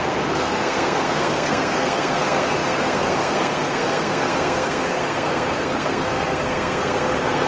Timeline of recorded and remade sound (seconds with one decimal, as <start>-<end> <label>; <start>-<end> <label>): 0.0-7.5 remade